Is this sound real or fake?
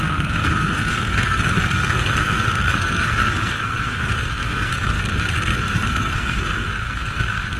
fake